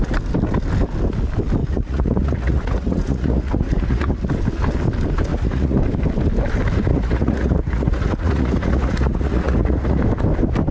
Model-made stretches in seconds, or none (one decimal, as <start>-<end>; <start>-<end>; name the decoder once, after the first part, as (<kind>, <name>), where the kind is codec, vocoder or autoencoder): 1.6-4.3 (vocoder, Vocos); 5.3-5.8; 6.9-10.0